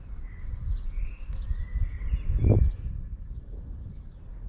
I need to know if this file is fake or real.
real